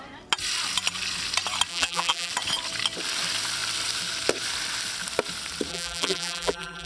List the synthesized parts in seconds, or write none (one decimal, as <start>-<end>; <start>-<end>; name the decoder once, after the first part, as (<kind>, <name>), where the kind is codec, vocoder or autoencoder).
1.7-2.3 (vocoder, BigVGAN v2); 5.7-6.9